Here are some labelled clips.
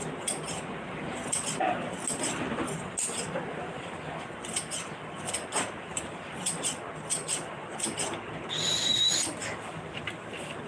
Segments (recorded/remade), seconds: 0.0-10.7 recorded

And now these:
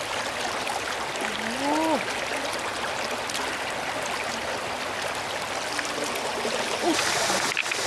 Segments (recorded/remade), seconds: 0.0-7.9 recorded

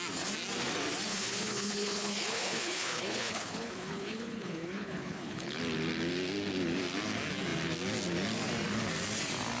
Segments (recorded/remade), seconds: 0.0-1.1 recorded; 1.1-5.6 remade; 5.6-9.6 recorded

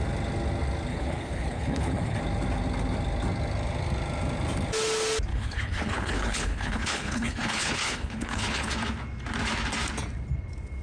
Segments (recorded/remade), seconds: 0.0-0.9 recorded; 0.9-2.2 remade; 2.2-5.3 recorded; 5.3-8.7 remade; 8.7-10.8 recorded

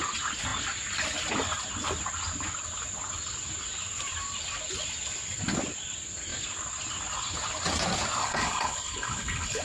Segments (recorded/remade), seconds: 0.0-8.2 recorded; 8.2-9.6 remade

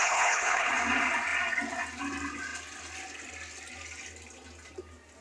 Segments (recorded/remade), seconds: 0.0-0.7 remade; 0.7-5.2 recorded

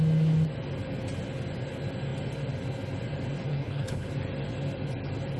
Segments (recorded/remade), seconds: 0.0-3.5 recorded; 3.5-4.1 remade; 4.1-5.4 recorded